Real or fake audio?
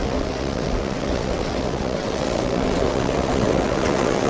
fake